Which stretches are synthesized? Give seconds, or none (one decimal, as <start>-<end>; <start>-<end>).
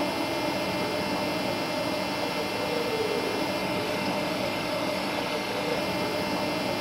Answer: 3.6-5.8